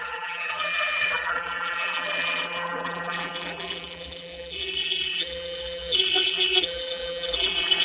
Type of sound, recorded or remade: remade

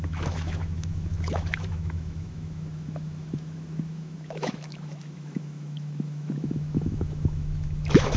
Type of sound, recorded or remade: remade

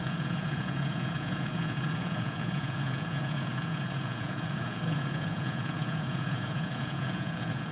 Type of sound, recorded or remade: remade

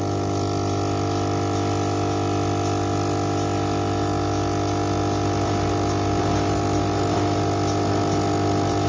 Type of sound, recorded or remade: recorded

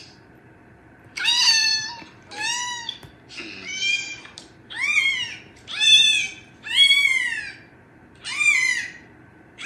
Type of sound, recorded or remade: recorded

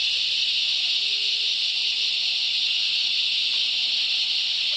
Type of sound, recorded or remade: recorded